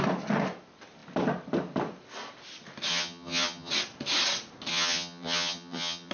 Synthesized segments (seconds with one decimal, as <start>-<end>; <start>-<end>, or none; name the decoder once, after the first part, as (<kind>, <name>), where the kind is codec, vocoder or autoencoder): 2.9-3.7 (vocoder, HiFi-GAN); 4.7-6.1